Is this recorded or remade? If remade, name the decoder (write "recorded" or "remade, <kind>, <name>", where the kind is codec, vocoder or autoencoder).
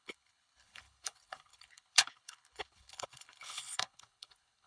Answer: remade, codec, HILCodec